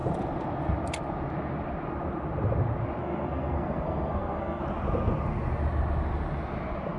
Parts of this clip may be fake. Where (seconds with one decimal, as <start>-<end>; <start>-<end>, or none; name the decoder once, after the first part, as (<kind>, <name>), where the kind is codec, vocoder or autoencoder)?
3.0-4.6 (codec, SNAC)